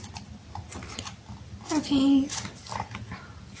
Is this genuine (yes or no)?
yes